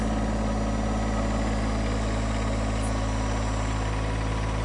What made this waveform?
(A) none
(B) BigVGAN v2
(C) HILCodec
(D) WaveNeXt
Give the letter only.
A